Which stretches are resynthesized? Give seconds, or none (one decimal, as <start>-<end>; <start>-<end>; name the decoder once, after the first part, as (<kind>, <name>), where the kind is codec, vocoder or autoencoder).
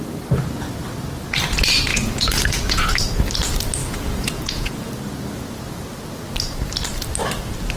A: 1.9-2.9 (vocoder, Vocos); 3.8-4.9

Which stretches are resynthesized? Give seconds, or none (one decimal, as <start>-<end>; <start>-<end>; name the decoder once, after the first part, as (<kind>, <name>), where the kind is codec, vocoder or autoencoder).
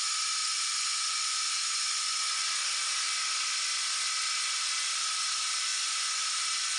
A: 0.4-2.5 (vocoder, Vocos); 5.7-6.2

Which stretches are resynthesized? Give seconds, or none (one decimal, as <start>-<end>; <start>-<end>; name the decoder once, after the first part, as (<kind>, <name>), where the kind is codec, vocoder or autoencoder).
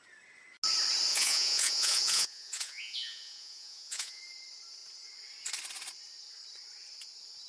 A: 1.1-4.2 (vocoder, Vocos)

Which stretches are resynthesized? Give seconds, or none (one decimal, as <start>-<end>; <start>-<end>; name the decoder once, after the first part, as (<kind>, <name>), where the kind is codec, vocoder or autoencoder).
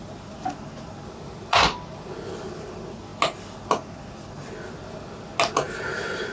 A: none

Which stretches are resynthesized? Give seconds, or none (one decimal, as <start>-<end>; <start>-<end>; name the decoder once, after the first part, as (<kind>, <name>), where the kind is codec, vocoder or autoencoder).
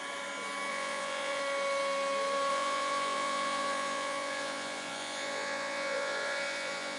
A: 0.7-1.4 (vocoder, Vocos); 2.5-7.0